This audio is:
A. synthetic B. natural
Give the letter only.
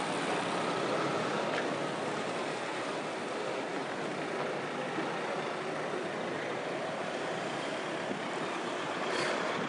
B